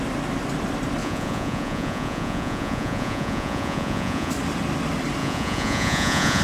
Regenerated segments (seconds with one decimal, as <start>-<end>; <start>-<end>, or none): 1.0-4.3; 5.2-6.4